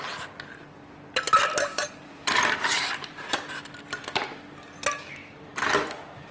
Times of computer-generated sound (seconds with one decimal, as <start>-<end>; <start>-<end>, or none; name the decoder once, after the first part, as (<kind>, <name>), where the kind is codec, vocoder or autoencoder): 1.7-3.5 (vocoder, BigVGAN v2)